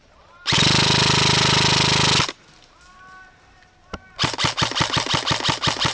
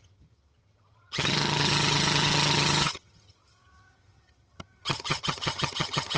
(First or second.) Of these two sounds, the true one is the first